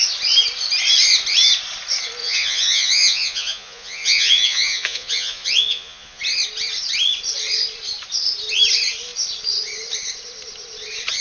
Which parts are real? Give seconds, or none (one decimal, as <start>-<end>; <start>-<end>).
0.0-2.2; 6.2-11.2